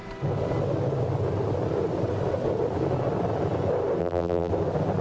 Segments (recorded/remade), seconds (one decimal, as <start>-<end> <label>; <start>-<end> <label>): 0.0-4.0 recorded; 4.0-4.5 remade; 4.5-5.0 recorded